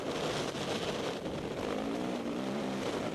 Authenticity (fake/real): real